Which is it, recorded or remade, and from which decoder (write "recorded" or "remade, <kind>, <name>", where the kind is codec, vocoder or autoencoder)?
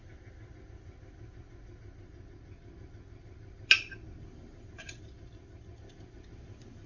recorded